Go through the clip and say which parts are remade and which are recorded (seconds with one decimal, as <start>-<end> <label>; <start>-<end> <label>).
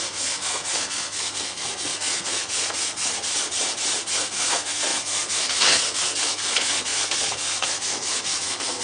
0.0-3.3 remade; 3.3-4.1 recorded; 4.1-8.8 remade